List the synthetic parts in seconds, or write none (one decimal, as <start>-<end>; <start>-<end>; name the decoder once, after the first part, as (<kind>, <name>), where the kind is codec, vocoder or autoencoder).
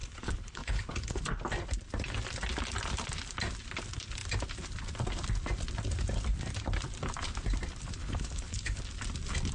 0.0-1.2 (codec, HILCodec); 8.0-8.8